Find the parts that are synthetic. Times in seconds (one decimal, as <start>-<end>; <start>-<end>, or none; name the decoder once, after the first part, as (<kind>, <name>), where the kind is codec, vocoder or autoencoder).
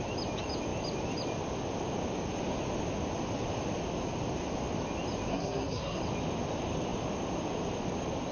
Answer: 5.3-6.0 (codec, SNAC)